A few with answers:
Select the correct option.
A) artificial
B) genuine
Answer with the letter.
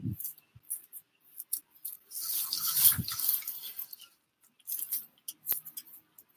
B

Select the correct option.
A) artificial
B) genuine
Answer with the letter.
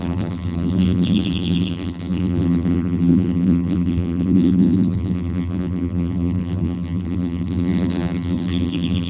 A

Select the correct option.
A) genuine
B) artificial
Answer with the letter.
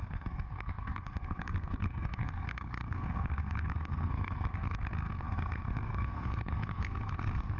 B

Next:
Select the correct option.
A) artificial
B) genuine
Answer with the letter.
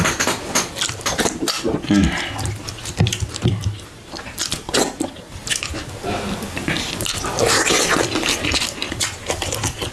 A